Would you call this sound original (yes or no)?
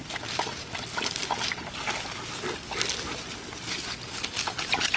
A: yes